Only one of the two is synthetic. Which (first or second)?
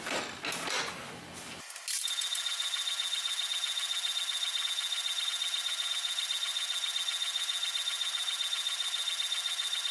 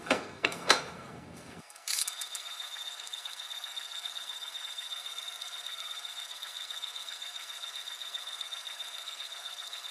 second